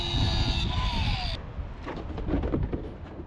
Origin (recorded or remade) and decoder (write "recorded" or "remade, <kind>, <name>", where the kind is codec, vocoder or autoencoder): recorded